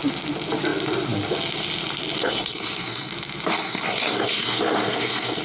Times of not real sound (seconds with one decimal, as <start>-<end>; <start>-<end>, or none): 2.2-3.1; 3.5-5.4